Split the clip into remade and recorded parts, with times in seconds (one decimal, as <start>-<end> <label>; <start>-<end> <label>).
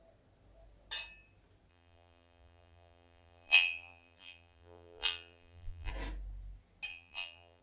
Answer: 0.0-1.7 recorded; 1.7-5.9 remade; 5.9-6.9 recorded; 6.9-7.6 remade